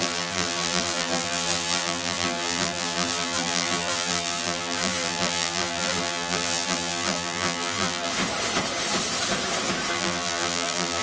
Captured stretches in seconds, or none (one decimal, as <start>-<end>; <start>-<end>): 8.1-9.9